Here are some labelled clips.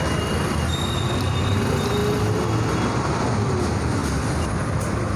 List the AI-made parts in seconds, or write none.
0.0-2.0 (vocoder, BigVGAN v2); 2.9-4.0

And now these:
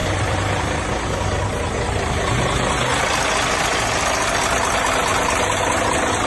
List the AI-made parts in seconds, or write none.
0.0-0.6 (vocoder, BigVGAN v2)

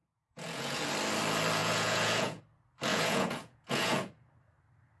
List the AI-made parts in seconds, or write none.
0.0-0.9 (vocoder, Vocos); 1.6-2.4; 2.9-4.1

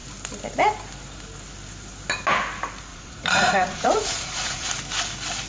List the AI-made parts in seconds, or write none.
2.9-4.7 (vocoder, Vocos)